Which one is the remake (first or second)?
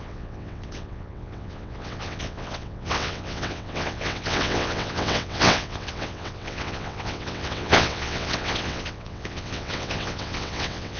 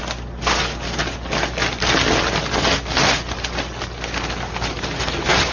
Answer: first